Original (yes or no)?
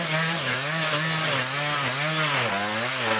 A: yes